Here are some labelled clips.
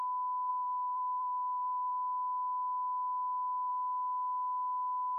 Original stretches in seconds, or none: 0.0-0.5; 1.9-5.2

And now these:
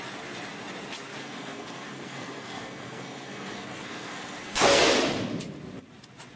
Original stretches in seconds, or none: 0.0-1.2; 4.9-6.4

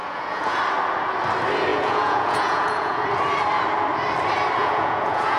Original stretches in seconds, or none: 0.6-1.7; 3.1-4.6

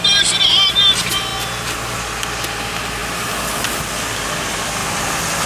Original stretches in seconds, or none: 1.3-2.4; 3.0-3.6; 4.8-5.5

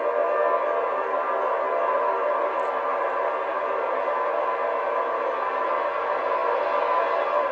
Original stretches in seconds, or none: 0.0-7.5

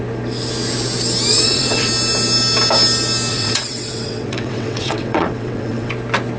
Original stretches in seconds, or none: 0.0-1.3; 1.9-3.3; 5.9-6.4

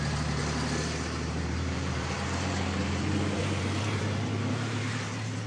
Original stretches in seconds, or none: none